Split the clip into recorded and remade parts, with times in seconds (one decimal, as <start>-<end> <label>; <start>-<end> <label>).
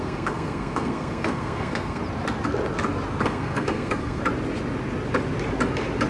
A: 0.0-2.0 remade; 2.0-3.2 recorded; 3.2-4.2 remade; 4.2-6.1 recorded